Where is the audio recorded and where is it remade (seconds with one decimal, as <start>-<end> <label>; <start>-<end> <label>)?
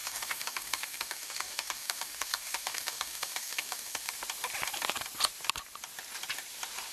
0.0-4.1 remade; 4.1-6.9 recorded